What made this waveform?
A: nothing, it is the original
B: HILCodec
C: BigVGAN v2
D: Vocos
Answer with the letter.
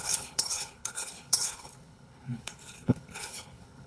B